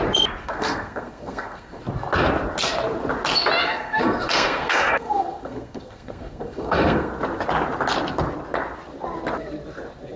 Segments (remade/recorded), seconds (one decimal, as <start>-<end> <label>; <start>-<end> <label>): 0.0-0.4 recorded; 0.4-1.8 remade; 1.8-3.6 recorded; 3.6-7.1 remade; 7.1-10.2 recorded